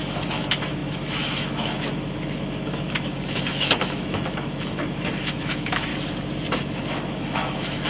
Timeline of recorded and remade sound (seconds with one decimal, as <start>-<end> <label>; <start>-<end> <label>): 0.0-5.9 remade; 5.9-6.6 recorded; 6.6-7.9 remade